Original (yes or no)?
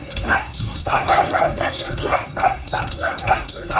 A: no